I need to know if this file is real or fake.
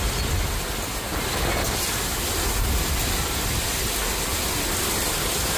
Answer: real